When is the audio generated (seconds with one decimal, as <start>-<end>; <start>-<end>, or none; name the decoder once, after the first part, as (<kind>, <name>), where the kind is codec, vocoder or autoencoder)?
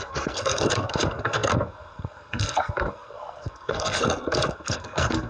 0.0-5.3 (codec, SNAC)